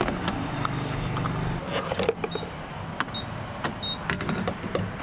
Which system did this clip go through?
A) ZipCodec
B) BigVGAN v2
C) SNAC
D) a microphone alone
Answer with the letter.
D